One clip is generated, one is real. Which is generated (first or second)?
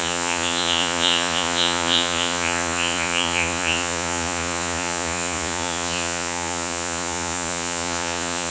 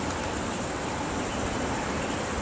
first